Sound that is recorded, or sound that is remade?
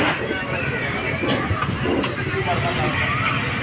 recorded